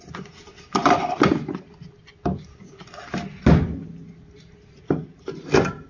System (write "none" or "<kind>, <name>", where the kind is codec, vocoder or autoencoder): none